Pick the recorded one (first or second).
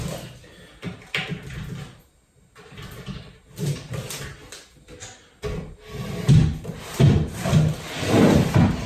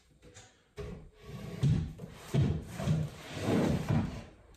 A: first